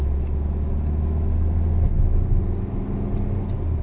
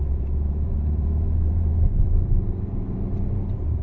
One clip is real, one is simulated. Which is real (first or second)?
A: first